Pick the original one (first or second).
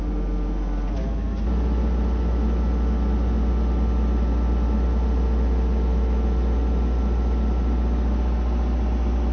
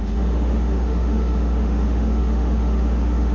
first